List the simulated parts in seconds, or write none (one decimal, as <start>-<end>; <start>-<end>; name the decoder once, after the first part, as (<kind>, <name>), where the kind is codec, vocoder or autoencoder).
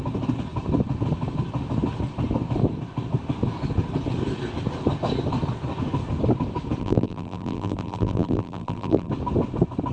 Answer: 6.8-9.1 (vocoder, BigVGAN v2)